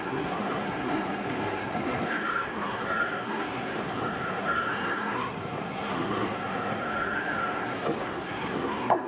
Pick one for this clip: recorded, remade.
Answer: remade